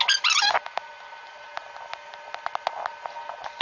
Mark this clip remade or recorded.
recorded